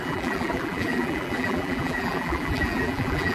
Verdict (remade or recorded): remade